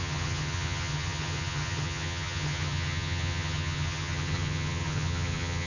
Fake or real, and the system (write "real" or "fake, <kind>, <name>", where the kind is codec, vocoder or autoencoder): fake, vocoder, HiFi-GAN